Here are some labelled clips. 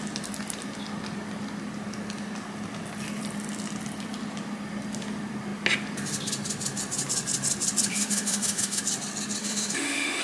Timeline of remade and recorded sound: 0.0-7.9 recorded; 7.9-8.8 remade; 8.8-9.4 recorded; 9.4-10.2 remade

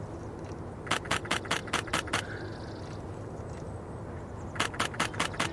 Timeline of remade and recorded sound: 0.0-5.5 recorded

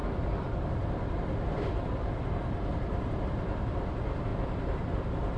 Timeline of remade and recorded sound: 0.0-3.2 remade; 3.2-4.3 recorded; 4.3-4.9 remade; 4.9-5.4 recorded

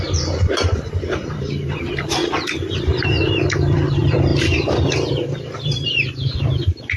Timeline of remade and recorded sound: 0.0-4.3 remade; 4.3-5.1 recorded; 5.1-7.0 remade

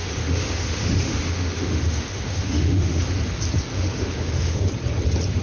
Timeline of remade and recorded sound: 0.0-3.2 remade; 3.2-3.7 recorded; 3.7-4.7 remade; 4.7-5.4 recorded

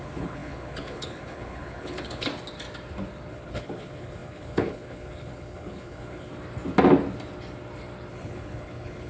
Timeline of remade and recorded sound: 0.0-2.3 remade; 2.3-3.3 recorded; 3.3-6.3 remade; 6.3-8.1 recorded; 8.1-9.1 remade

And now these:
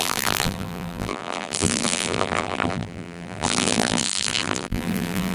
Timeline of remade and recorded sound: 0.0-5.3 remade